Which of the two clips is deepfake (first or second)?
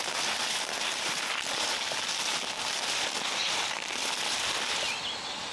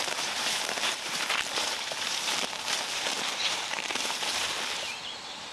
second